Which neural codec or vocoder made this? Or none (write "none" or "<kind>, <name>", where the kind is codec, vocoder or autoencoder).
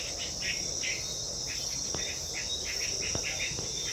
none